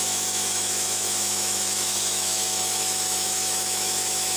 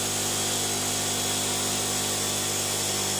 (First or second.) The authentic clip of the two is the second